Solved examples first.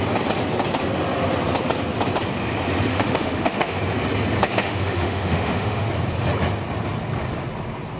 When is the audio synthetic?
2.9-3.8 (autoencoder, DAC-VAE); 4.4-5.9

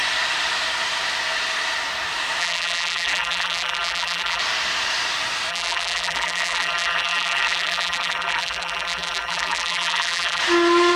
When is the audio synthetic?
2.4-4.4 (vocoder, BigVGAN v2); 5.5-10.4

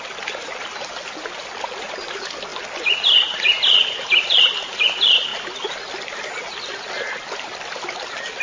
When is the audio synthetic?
0.0-2.5 (vocoder, BigVGAN v2); 4.2-5.3; 6.4-8.4

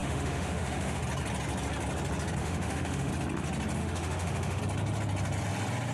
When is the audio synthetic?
0.0-1.0 (autoencoder, DAC-VAE); 2.4-3.1; 3.8-4.6

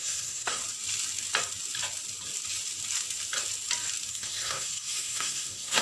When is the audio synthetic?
0.0-0.6 (codec, SNAC); 4.1-5.8

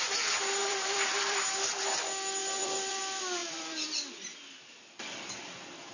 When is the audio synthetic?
0.6-1.4 (vocoder, BigVGAN v2); 2.4-3.0; 3.4-4.2

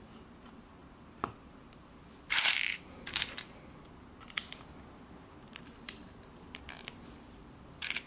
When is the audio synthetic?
none